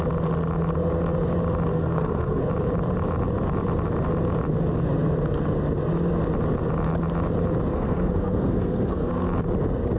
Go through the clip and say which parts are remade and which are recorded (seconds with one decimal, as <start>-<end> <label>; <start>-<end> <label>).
0.0-1.7 recorded; 1.7-2.4 remade; 2.4-7.7 recorded; 7.7-9.1 remade; 9.1-10.0 recorded